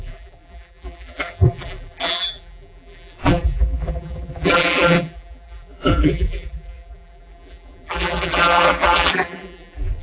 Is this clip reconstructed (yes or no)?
yes